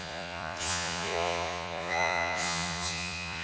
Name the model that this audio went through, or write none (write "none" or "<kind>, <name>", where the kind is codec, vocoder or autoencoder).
vocoder, Vocos